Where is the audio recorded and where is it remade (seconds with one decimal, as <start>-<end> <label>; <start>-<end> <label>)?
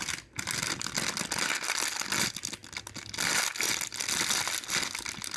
0.0-5.4 recorded